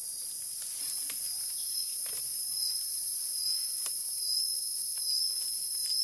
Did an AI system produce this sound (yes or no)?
no